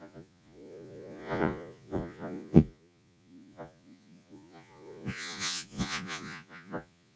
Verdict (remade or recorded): remade